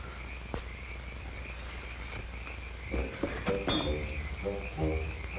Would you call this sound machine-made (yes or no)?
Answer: no